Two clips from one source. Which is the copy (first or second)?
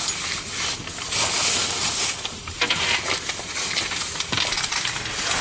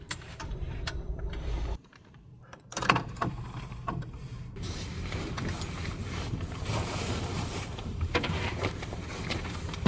second